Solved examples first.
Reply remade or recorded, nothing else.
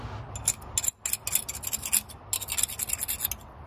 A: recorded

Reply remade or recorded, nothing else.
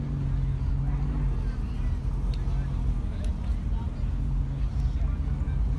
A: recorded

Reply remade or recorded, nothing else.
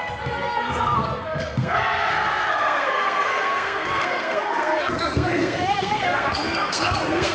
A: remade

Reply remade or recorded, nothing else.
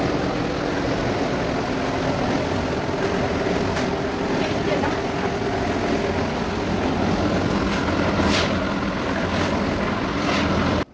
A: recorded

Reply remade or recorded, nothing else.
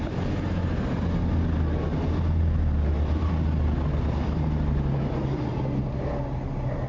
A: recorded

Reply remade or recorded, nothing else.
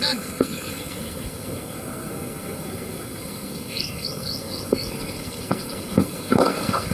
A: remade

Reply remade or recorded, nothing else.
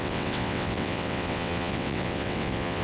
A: remade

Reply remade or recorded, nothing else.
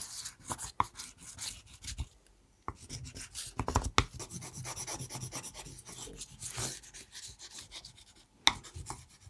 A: recorded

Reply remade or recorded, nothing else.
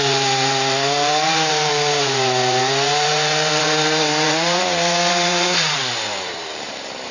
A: remade